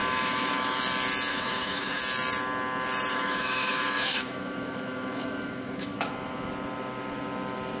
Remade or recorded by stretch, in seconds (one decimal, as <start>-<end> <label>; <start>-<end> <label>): 0.0-0.8 remade; 0.8-1.3 recorded; 1.3-2.0 remade; 2.0-3.1 recorded; 3.1-6.5 remade; 6.5-7.8 recorded